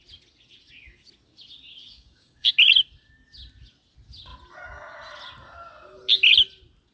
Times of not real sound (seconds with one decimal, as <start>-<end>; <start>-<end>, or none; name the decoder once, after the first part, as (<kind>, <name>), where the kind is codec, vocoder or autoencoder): 1.8-2.5 (codec, DAC)

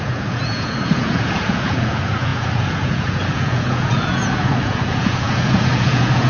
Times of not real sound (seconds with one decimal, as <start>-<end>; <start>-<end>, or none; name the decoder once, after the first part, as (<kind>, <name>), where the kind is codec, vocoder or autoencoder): 0.0-6.3 (vocoder, Vocos)

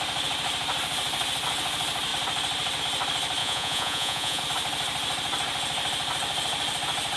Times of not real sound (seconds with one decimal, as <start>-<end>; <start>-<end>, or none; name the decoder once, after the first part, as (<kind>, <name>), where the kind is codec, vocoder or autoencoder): 3.4-4.4 (vocoder, Vocos)

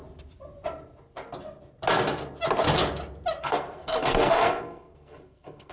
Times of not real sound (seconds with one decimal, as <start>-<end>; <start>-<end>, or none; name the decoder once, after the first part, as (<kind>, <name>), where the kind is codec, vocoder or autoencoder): 3.4-5.7 (codec, SNAC)